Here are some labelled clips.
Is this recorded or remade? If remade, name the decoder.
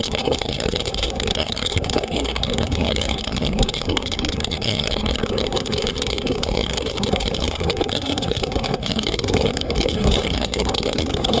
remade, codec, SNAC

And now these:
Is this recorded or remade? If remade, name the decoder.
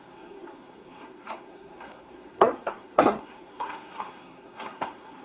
remade, codec, SNAC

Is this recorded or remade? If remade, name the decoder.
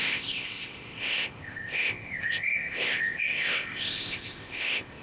remade, codec, ZipCodec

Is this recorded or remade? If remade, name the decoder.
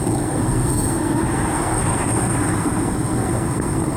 remade, codec, SNAC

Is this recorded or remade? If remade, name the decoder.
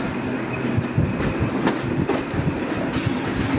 recorded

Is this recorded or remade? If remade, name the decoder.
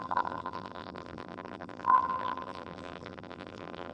remade, vocoder, BigVGAN v2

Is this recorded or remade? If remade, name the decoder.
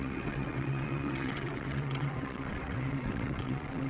remade, vocoder, WaveNeXt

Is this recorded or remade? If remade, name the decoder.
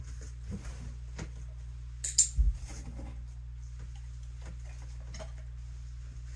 recorded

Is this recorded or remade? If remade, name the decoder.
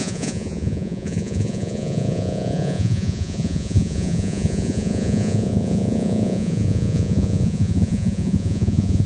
remade, vocoder, Vocos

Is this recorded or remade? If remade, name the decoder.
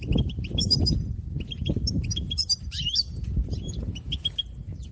remade, vocoder, BigVGAN v2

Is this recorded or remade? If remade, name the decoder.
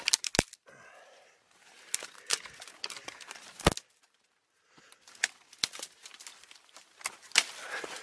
recorded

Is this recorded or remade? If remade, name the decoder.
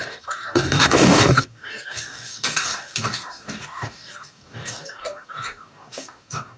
remade, codec, DAC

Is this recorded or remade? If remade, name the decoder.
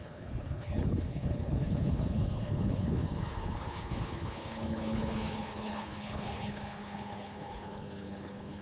remade, codec, HILCodec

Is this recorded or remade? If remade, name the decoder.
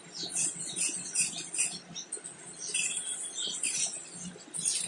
recorded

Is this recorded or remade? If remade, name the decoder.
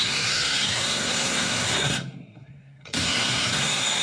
remade, codec, SNAC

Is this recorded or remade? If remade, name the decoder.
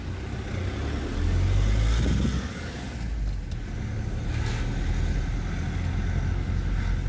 recorded